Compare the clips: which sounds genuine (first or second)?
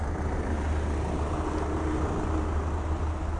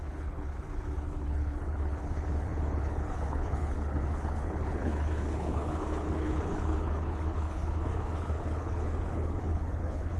first